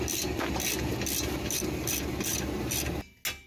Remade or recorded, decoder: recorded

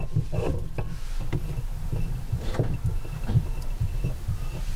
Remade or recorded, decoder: recorded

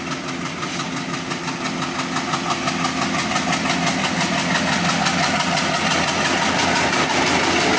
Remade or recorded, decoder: recorded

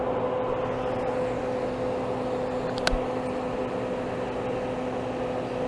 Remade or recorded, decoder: recorded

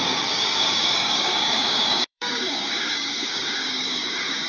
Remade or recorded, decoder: remade, codec, DAC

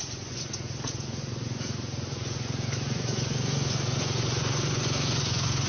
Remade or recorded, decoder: remade, vocoder, Vocos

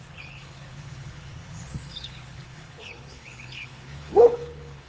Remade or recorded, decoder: remade, codec, HILCodec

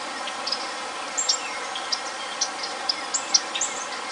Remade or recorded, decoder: recorded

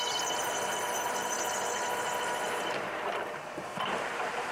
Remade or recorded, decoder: remade, vocoder, BigVGAN v2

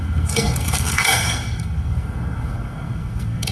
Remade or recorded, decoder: remade, codec, SNAC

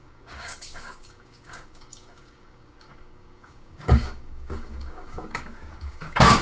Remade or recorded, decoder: remade, codec, DAC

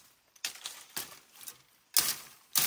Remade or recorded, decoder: recorded